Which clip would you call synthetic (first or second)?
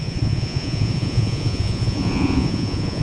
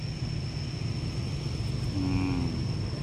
first